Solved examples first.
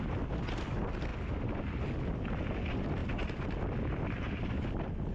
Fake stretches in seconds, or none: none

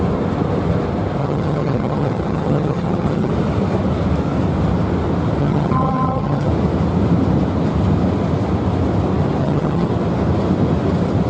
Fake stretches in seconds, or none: 1.2-3.3 (vocoder, HiFi-GAN); 5.4-6.5; 9.4-9.9

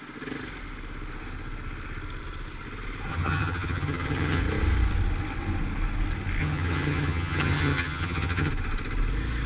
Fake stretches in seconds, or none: 3.1-4.4 (vocoder, HiFi-GAN); 6.4-8.5

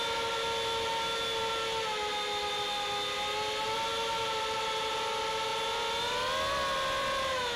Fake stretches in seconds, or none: none

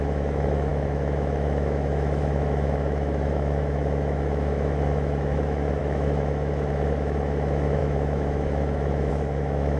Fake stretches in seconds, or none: 0.0-9.8 (autoencoder, DAC-VAE)

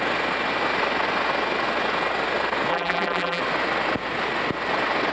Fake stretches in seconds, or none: 2.7-3.4 (vocoder, BigVGAN v2)